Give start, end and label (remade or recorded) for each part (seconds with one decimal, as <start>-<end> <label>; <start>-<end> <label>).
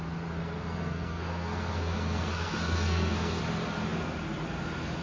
0.0-0.4 recorded; 0.4-3.4 remade; 3.4-5.0 recorded